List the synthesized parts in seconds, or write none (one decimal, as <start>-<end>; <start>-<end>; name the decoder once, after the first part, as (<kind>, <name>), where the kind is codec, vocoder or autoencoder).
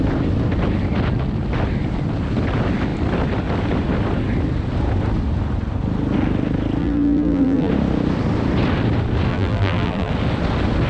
6.8-7.7 (vocoder, BigVGAN v2); 9.3-10.1